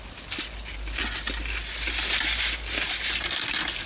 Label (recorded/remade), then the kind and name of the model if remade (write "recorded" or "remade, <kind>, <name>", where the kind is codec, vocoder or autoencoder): recorded